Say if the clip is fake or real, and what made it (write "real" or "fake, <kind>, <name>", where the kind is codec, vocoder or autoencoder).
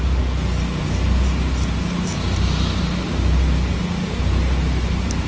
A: real